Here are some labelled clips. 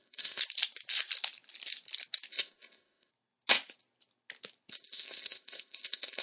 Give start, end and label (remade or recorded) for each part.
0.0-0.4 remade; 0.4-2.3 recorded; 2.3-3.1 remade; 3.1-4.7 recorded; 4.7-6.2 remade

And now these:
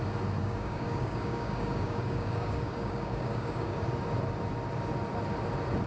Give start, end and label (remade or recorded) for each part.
0.0-0.4 recorded; 0.4-3.9 remade; 3.9-5.9 recorded

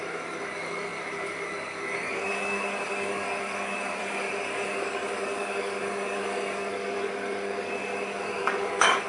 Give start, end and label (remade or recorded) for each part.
0.0-9.1 remade

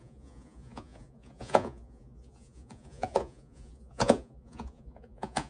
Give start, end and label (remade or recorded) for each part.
0.0-5.5 remade